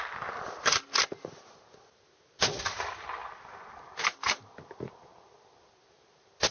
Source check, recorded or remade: recorded